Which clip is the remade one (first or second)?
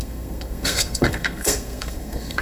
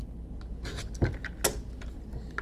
first